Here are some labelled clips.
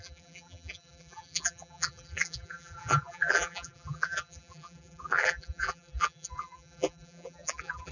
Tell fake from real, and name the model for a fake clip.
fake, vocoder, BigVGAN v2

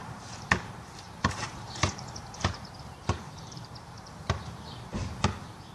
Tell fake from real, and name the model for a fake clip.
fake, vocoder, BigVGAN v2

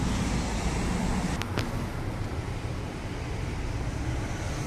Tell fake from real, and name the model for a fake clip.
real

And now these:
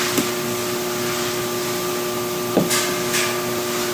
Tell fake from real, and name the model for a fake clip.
real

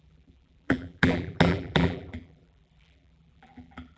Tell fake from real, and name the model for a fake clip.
fake, vocoder, BigVGAN v2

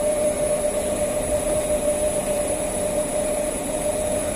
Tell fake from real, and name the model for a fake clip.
fake, vocoder, BigVGAN v2